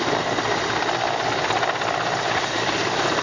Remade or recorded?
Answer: recorded